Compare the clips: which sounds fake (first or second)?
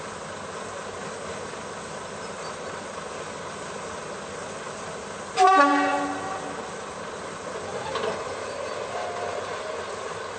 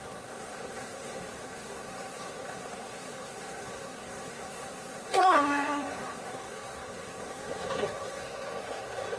second